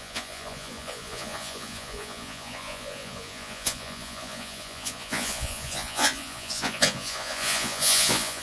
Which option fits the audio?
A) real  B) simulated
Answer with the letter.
B